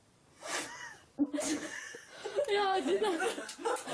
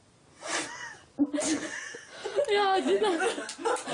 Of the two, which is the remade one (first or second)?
first